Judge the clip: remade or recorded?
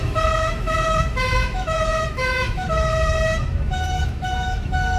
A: remade